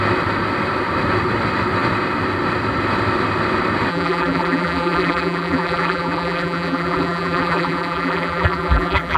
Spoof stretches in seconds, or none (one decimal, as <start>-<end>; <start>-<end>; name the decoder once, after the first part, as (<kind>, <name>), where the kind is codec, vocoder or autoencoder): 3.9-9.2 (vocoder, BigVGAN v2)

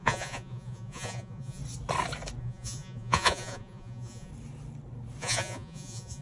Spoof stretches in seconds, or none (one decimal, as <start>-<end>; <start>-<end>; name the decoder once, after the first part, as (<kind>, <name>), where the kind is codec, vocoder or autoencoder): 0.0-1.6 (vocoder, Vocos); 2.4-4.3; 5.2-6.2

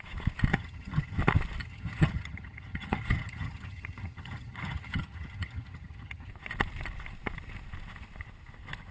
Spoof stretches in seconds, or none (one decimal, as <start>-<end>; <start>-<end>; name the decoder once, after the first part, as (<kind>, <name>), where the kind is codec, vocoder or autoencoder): 0.5-1.2 (vocoder, HiFi-GAN); 1.6-6.3

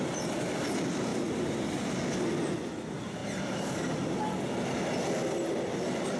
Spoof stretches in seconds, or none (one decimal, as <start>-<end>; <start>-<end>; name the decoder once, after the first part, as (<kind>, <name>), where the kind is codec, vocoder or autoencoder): none

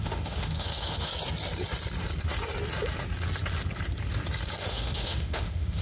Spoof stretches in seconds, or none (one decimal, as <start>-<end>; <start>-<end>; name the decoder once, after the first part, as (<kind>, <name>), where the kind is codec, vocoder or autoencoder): 0.0-1.1 (autoencoder, DAC-VAE); 4.6-5.8

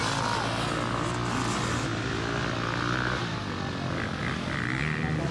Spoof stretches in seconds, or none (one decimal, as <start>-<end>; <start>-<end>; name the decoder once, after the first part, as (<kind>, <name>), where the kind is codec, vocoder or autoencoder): none